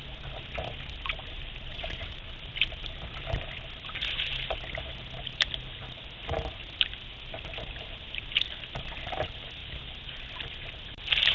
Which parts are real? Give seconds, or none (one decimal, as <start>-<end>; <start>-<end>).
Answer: 0.0-1.7; 2.3-11.3